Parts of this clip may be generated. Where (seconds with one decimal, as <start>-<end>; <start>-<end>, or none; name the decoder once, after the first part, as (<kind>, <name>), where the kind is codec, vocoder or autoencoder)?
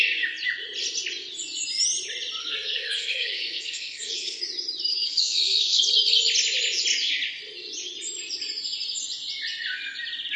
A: 2.4-4.4 (codec, SNAC); 4.9-5.8